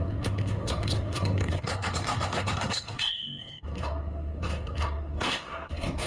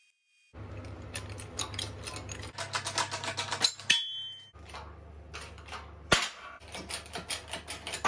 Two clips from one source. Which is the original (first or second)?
second